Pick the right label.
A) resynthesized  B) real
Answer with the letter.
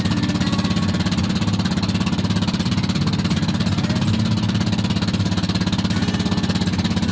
B